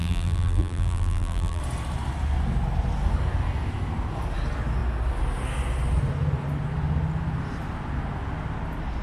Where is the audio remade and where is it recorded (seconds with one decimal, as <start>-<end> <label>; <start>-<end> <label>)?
0.0-1.6 remade; 1.6-9.0 recorded